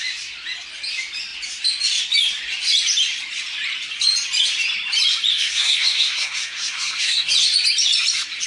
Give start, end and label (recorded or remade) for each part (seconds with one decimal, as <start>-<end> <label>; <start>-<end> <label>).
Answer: 0.0-5.3 recorded; 5.3-7.3 remade; 7.3-8.5 recorded